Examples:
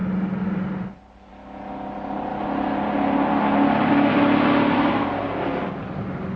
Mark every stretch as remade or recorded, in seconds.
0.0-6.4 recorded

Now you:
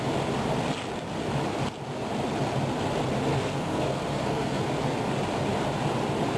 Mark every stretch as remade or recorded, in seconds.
0.0-3.3 recorded; 3.3-4.7 remade; 4.7-6.4 recorded

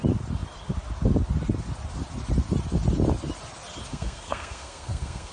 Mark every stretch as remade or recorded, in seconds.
0.0-3.9 recorded; 3.9-5.3 remade

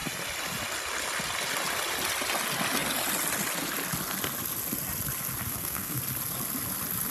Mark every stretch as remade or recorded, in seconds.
0.0-5.5 recorded; 5.5-6.0 remade; 6.0-7.1 recorded

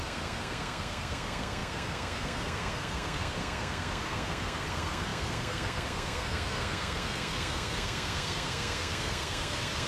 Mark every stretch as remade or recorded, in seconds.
0.0-9.9 remade